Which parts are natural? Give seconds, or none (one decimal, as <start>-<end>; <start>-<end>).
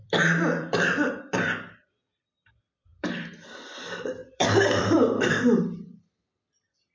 none